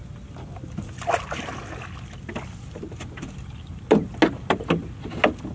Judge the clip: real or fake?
real